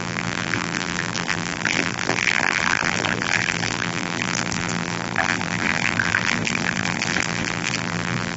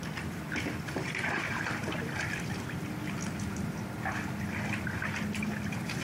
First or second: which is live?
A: second